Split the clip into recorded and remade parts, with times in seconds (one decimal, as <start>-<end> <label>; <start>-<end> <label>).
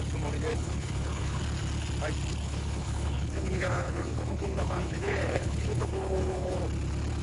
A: 0.0-0.5 recorded; 0.5-1.4 remade; 1.4-2.3 recorded; 2.3-6.6 remade; 6.6-7.2 recorded